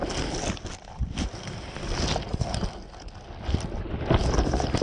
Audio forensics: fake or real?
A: real